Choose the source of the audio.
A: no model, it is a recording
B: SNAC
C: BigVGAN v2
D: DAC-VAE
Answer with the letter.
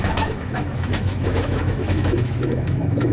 D